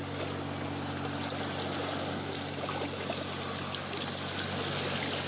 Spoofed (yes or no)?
no